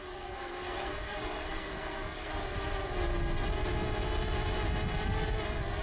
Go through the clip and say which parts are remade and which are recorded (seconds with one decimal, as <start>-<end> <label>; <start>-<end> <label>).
0.0-2.3 remade; 2.3-5.8 recorded